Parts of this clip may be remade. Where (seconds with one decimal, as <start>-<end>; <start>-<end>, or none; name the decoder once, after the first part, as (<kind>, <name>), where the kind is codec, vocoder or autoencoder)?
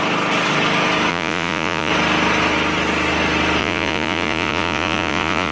1.1-1.9 (vocoder, Vocos); 3.6-5.5